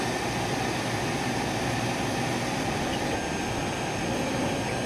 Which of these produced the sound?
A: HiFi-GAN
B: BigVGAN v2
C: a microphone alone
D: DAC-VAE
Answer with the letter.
C